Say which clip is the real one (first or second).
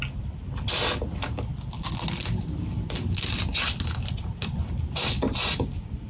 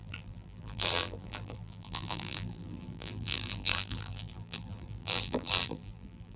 first